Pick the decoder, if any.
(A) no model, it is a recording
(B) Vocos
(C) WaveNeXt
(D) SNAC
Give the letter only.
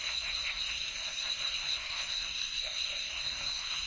D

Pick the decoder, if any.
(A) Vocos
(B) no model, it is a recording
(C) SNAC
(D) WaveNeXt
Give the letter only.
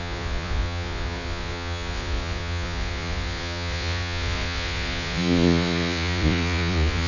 A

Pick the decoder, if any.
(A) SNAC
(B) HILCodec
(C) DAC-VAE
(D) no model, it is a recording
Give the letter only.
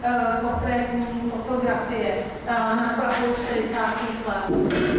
D